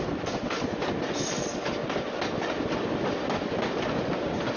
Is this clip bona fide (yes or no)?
yes